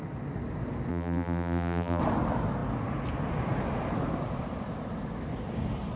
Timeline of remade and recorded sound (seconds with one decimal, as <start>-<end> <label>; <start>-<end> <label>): 0.0-0.9 recorded; 0.9-2.0 remade; 2.0-6.0 recorded